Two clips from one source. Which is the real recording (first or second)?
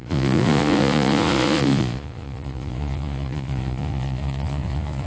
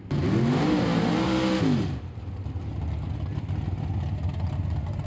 second